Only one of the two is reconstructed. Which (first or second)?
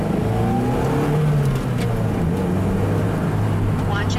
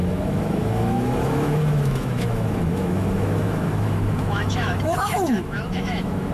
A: second